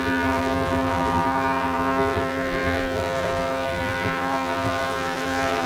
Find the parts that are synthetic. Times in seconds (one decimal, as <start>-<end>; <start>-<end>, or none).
0.0-5.7